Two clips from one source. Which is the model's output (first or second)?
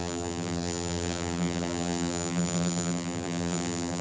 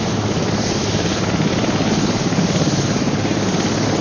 first